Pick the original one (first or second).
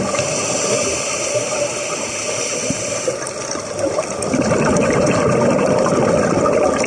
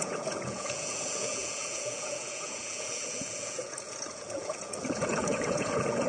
first